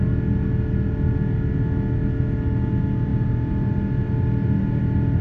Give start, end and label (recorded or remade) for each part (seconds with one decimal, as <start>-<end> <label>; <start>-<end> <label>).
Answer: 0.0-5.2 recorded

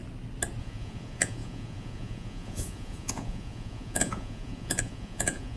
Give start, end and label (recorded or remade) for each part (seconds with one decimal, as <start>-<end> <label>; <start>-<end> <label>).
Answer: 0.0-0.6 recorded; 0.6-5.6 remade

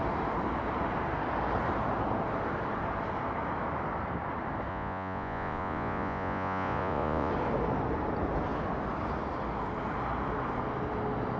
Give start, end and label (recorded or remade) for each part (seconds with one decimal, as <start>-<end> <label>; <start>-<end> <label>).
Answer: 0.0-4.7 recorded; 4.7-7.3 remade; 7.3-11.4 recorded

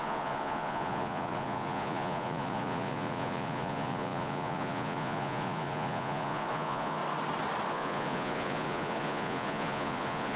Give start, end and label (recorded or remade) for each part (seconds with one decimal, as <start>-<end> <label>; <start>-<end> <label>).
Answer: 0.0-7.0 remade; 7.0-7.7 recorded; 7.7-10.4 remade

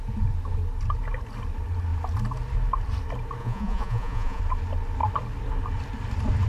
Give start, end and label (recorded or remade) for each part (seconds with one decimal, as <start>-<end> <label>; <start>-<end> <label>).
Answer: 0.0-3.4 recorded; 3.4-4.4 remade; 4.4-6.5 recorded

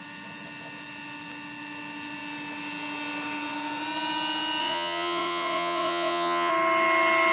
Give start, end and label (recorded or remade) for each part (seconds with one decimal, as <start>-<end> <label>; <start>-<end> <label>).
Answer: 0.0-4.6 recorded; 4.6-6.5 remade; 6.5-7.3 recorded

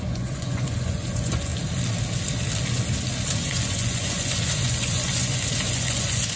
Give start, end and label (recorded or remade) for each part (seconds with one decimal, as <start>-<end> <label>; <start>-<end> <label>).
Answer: 0.0-1.5 remade; 1.5-3.4 recorded; 3.4-6.4 remade

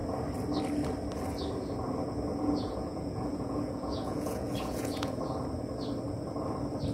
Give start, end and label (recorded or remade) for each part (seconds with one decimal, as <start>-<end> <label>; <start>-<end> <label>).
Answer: 0.0-2.3 recorded; 2.3-5.2 remade; 5.2-6.9 recorded